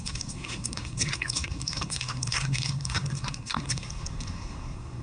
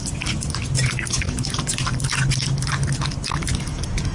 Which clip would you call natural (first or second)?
second